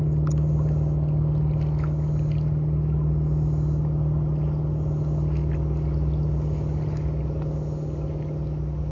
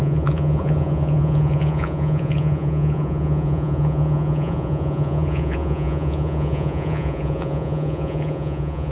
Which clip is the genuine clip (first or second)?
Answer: first